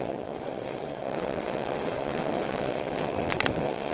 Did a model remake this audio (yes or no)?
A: yes